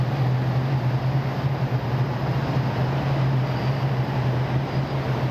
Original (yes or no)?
yes